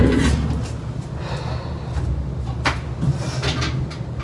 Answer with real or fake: real